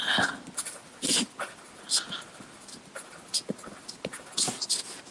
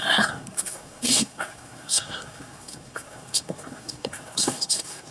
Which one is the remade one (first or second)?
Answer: second